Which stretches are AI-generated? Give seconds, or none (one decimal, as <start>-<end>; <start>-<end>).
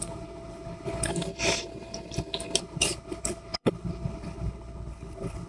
0.0-1.1; 2.6-5.5